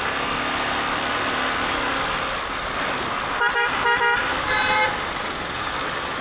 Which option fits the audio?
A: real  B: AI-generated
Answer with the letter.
A